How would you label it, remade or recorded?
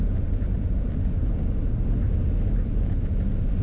recorded